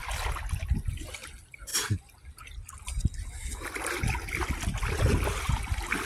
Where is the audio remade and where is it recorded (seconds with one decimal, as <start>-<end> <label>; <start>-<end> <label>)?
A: 0.0-0.9 recorded; 0.9-1.7 remade; 1.7-5.4 recorded; 5.4-6.1 remade